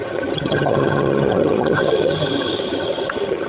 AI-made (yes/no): yes